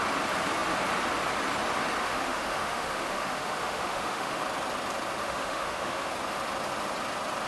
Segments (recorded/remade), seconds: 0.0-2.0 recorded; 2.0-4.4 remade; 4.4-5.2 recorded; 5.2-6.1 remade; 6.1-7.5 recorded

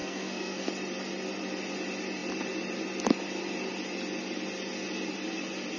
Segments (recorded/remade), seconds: 0.0-0.7 remade; 0.7-5.8 recorded

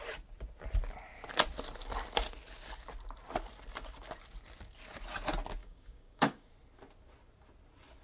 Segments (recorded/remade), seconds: 0.0-5.6 recorded; 5.6-6.5 remade; 6.5-8.0 recorded

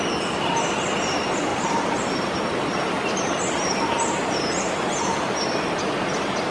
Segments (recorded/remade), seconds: 0.0-1.5 recorded; 1.5-5.4 remade; 5.4-6.5 recorded

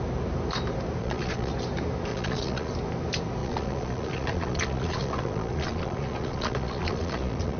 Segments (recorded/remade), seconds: 0.0-1.0 recorded; 1.0-1.5 remade; 1.5-2.1 recorded; 2.1-2.7 remade; 2.7-3.4 recorded; 3.4-7.6 remade

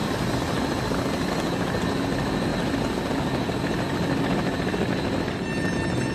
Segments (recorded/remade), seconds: 0.0-6.1 recorded

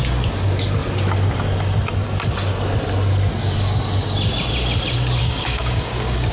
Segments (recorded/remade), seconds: 0.0-5.2 recorded; 5.2-6.3 remade